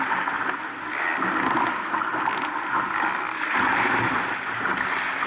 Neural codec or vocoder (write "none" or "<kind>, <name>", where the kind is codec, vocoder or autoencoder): none